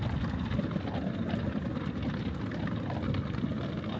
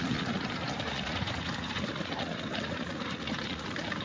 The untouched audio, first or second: first